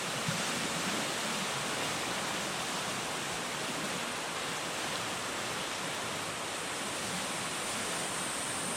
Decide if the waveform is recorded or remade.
recorded